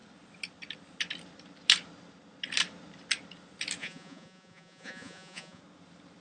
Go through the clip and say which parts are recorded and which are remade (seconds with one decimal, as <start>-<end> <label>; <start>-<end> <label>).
0.0-3.8 recorded; 3.8-5.6 remade; 5.6-6.2 recorded